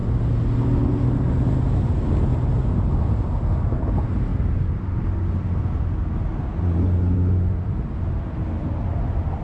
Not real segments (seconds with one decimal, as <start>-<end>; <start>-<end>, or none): none